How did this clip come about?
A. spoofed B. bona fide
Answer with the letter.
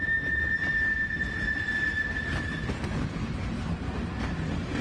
B